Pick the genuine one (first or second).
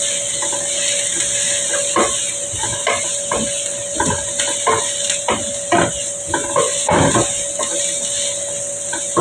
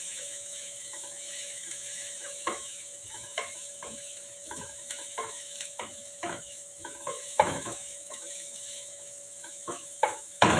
first